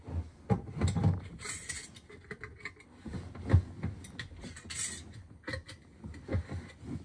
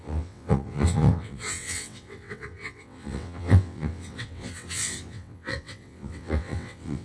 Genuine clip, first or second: first